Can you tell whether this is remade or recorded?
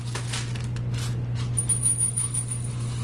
recorded